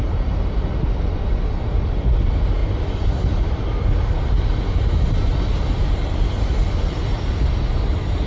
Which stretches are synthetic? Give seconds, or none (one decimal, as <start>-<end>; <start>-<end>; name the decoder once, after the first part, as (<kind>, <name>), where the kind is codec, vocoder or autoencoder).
none